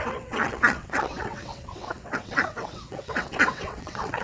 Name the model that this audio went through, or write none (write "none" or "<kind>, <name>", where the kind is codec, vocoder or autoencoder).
vocoder, WaveNeXt